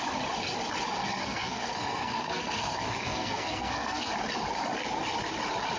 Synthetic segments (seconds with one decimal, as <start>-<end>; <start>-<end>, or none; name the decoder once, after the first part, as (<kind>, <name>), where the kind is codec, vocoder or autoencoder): 1.0-4.1 (codec, SNAC)